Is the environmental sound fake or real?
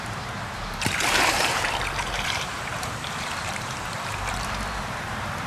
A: fake